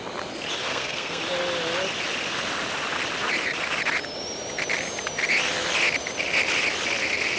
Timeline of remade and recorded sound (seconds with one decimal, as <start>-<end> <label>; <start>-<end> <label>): 0.0-0.7 recorded; 0.7-1.2 remade; 1.2-7.4 recorded